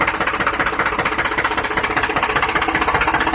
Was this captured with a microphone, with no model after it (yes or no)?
yes